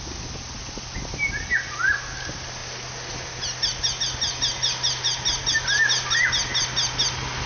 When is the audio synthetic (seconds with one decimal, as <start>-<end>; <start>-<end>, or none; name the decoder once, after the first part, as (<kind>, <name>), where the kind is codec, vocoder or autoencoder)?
none